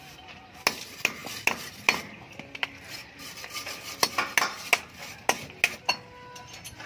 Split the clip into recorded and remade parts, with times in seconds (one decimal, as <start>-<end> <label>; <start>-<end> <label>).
0.0-6.9 recorded